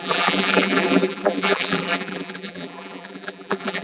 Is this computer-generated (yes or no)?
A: yes